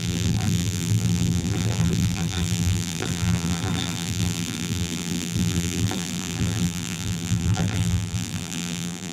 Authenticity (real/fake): fake